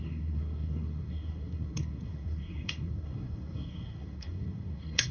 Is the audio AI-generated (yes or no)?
yes